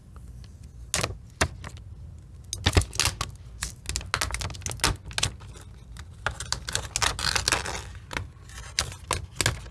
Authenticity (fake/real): real